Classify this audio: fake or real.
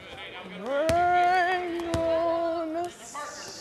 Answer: real